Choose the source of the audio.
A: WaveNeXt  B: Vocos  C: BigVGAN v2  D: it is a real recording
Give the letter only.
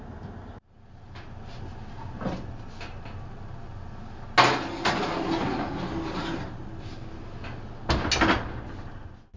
D